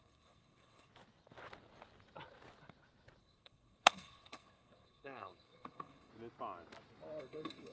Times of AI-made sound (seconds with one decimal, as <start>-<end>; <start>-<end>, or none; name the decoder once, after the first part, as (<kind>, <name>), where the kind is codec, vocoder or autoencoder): 0.0-0.9 (codec, SNAC); 3.2-6.1; 7.2-7.7